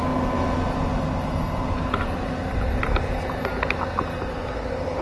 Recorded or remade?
recorded